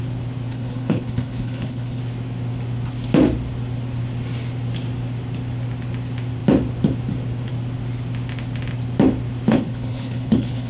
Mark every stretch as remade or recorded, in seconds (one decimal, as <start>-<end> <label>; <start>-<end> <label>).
0.0-0.5 recorded; 0.5-2.0 remade; 2.0-9.5 recorded; 9.5-10.7 remade